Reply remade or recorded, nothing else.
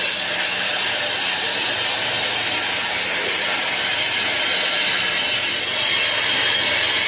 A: recorded